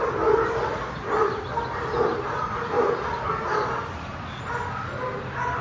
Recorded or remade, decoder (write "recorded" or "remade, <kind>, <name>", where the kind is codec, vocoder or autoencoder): recorded